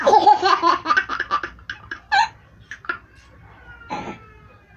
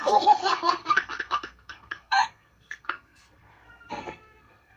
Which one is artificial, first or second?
second